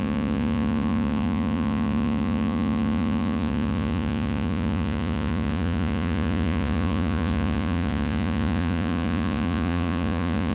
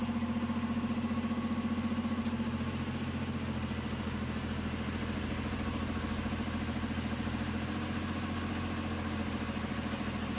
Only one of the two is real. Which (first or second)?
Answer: second